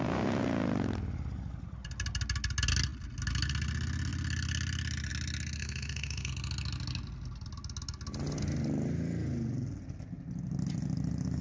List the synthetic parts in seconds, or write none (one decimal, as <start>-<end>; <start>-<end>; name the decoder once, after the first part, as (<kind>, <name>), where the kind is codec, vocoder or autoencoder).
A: 5.6-6.3 (autoencoder, DAC-VAE)